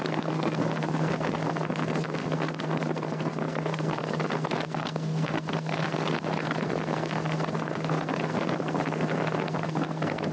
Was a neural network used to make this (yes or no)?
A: yes